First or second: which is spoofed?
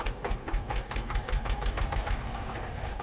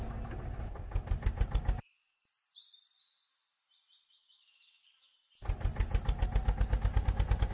first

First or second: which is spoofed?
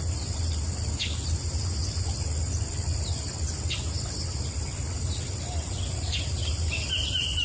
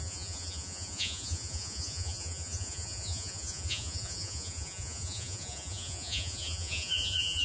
second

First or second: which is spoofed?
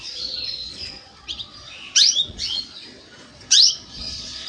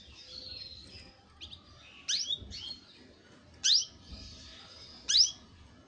first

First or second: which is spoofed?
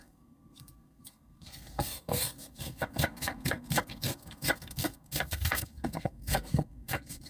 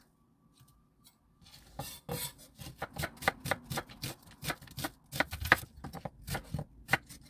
first